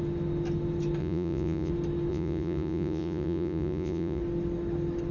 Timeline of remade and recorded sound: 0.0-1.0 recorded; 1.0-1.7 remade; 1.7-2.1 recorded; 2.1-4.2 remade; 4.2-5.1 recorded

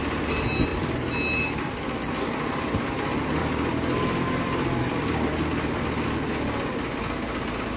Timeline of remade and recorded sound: 0.0-3.4 recorded; 3.4-5.8 remade; 5.8-7.8 recorded

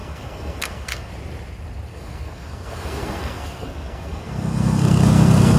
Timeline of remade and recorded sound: 0.0-1.1 remade; 1.1-1.9 recorded; 1.9-5.6 remade

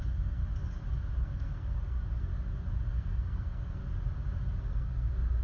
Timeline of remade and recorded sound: 0.0-0.4 remade; 0.4-1.2 recorded; 1.2-2.3 remade; 2.3-2.9 recorded; 2.9-3.8 remade; 3.8-4.6 recorded; 4.6-5.4 remade